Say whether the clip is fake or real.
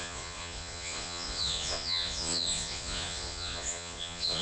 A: fake